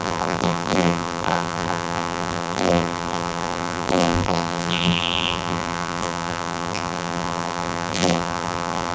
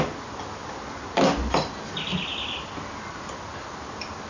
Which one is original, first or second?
second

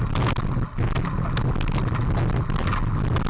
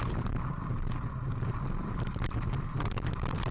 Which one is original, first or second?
first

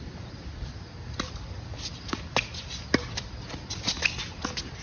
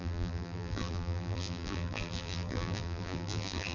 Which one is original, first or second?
first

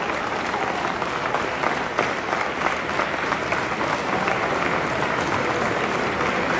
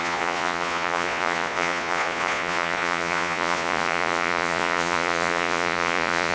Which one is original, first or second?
first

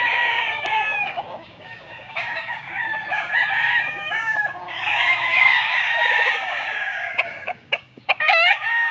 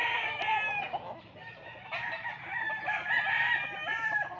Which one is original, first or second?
second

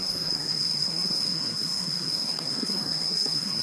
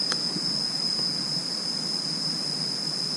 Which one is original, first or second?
second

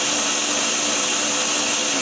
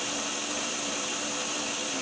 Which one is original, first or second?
first